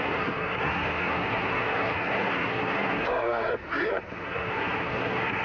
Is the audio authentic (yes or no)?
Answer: no